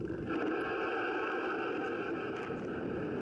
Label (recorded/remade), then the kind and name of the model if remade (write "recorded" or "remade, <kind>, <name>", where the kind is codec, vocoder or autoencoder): recorded